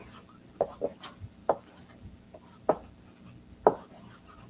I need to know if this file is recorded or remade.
recorded